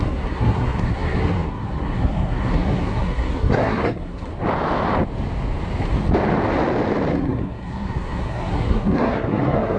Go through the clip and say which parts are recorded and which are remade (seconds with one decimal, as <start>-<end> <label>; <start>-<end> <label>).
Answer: 0.0-4.3 remade; 4.3-7.1 recorded; 7.1-9.8 remade